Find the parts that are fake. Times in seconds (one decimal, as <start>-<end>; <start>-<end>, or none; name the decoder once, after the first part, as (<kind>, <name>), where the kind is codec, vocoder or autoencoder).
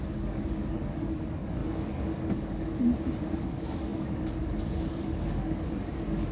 0.0-2.7 (codec, DAC); 3.3-6.3